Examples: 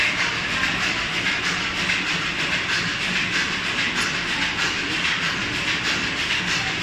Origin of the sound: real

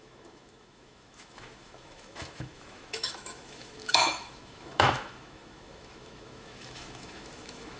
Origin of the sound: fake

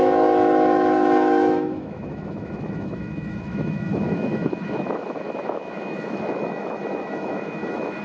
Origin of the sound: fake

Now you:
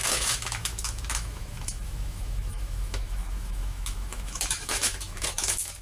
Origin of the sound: fake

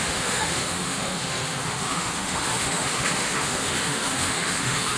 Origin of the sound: fake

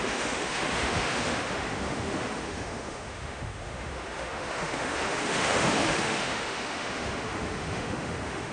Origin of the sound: fake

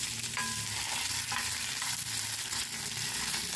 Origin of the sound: real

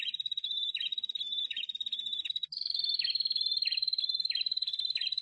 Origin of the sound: real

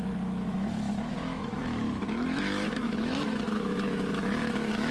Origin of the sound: fake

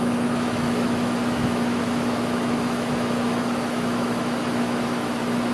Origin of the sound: fake